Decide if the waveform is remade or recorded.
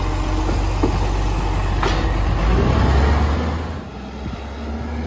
recorded